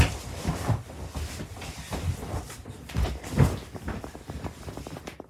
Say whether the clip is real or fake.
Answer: real